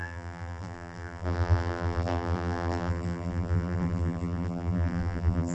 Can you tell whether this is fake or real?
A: fake